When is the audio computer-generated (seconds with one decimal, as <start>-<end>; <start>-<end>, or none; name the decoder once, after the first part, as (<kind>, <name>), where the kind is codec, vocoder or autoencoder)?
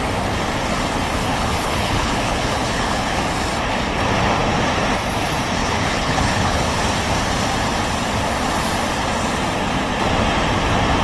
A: 1.2-3.2 (codec, HILCodec); 5.6-6.8